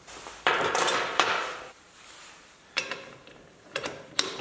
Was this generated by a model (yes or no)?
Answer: yes